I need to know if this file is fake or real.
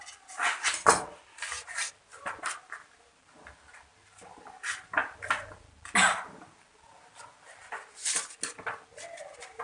real